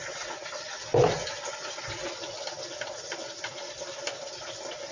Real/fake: real